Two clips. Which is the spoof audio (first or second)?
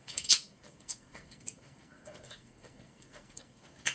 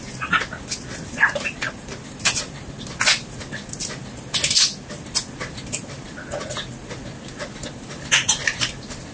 first